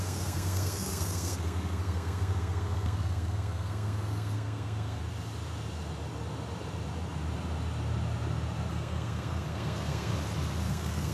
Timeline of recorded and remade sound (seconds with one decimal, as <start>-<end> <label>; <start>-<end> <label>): 0.0-5.0 remade; 5.0-8.7 recorded; 8.7-10.1 remade; 10.1-10.7 recorded; 10.7-11.1 remade